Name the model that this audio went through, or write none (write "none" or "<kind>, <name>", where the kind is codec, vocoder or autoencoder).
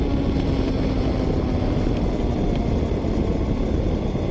none